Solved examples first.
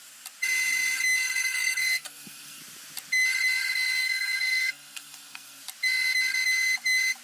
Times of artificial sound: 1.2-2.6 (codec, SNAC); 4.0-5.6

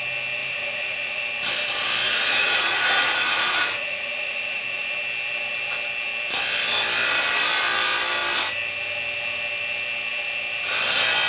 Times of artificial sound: 0.4-1.2 (vocoder, Vocos); 2.0-4.9

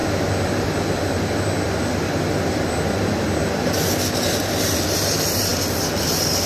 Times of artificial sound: none

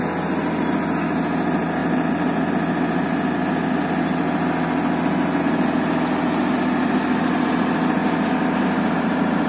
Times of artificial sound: none

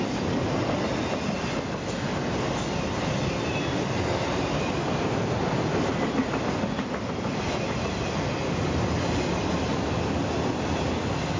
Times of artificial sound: none

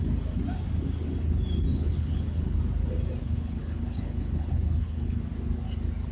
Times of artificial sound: 1.7-2.6 (codec, HILCodec); 3.2-5.2